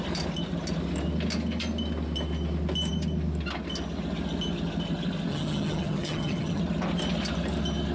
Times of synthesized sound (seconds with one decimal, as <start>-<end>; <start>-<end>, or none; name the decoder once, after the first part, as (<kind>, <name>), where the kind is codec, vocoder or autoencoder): 5.3-6.6 (vocoder, HiFi-GAN)